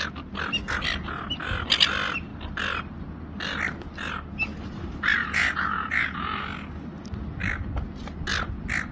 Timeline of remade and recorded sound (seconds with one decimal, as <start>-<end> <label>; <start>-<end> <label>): 0.0-5.2 recorded; 5.2-6.4 remade; 6.4-8.9 recorded